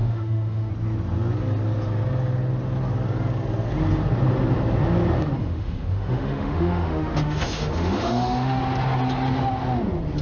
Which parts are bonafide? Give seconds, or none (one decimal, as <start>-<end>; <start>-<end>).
0.7-5.4; 8.6-10.2